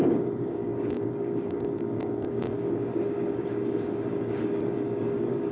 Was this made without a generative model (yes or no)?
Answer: no